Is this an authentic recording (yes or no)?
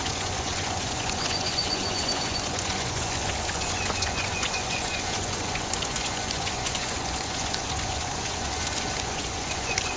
no